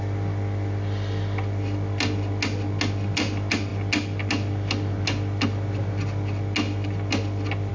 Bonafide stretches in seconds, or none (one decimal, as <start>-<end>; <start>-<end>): 0.0-7.7